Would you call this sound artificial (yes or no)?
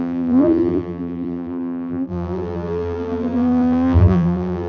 yes